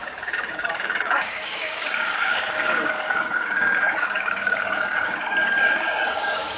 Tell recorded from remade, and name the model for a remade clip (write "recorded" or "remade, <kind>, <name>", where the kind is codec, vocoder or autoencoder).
remade, codec, DAC